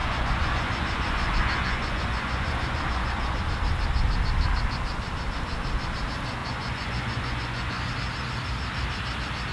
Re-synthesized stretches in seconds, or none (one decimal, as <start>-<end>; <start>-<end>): 0.0-3.4; 6.4-7.9

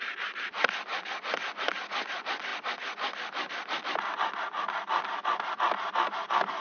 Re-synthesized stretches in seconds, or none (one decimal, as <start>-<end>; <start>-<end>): none

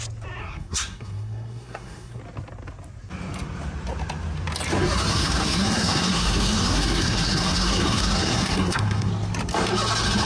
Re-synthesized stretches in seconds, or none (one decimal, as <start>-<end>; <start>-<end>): 0.4-2.2; 5.1-9.1

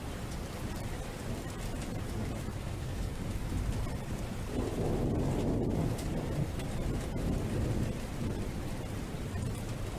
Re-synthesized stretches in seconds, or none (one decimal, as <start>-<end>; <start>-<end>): 2.5-3.2

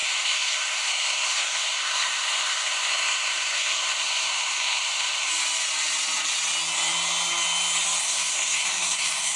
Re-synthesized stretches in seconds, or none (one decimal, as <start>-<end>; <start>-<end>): 0.0-5.3; 8.0-9.4

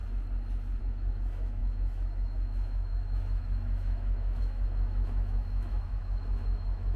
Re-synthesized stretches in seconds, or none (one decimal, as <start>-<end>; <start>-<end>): 0.8-7.0

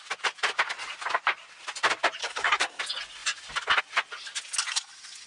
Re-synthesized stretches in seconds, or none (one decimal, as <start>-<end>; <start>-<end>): 2.2-2.8

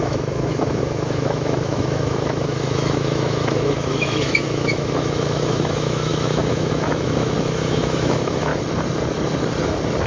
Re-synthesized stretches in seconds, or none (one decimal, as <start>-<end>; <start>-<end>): 0.0-8.5